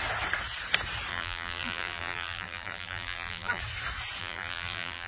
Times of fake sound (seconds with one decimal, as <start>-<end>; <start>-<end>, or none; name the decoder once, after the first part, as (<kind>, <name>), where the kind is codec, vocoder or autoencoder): 1.1-3.6 (vocoder, BigVGAN v2); 4.2-5.1